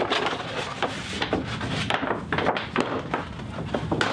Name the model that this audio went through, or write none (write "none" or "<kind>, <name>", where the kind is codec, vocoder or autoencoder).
none